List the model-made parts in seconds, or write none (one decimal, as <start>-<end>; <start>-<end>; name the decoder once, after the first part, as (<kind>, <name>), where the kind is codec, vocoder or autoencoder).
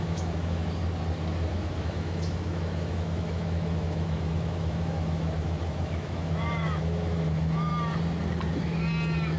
0.0-0.6 (autoencoder, DAC-VAE); 1.5-7.7